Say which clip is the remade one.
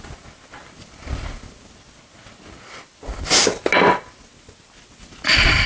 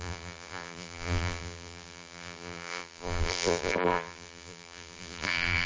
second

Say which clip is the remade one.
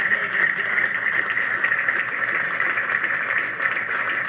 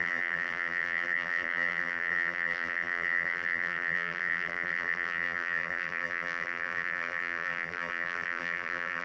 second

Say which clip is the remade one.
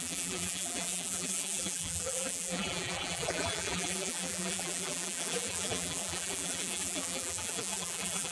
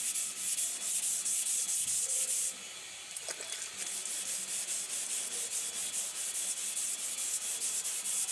first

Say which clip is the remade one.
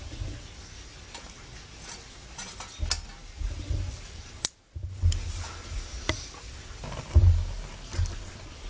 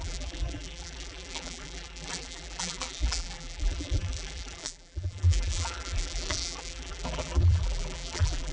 second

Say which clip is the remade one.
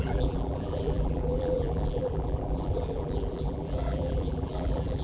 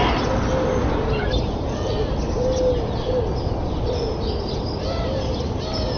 first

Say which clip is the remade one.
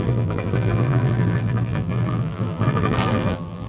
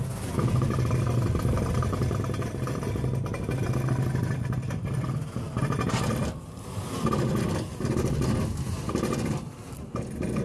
first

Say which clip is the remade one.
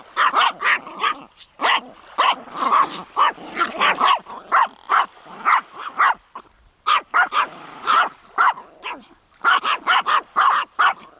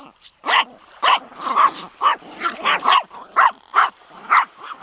second